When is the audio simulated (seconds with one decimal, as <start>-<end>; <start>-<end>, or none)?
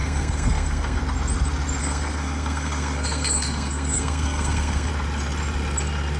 0.0-1.0; 1.8-4.9